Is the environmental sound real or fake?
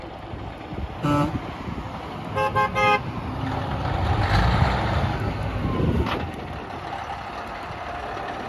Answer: real